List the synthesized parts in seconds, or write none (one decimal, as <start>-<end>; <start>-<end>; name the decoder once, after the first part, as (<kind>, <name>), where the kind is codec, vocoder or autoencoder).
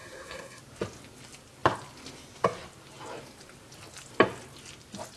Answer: 0.0-0.6 (codec, SNAC)